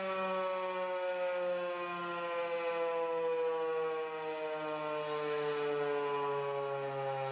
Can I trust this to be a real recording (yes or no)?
yes